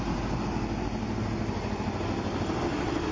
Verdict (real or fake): real